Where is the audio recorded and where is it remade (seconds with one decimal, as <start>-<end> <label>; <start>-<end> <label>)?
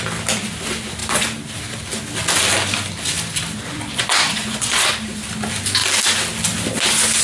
0.0-3.7 recorded; 3.7-4.9 remade; 4.9-7.2 recorded